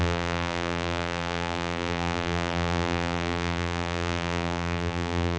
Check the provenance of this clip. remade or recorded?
remade